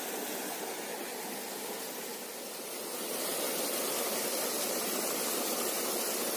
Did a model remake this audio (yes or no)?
no